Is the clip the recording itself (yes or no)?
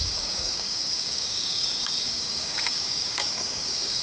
no